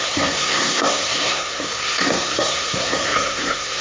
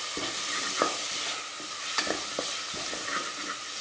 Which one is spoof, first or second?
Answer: first